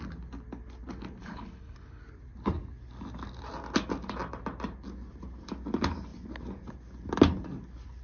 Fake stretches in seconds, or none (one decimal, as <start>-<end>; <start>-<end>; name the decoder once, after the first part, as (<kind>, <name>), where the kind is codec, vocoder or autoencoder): 1.2-2.0 (codec, HILCodec)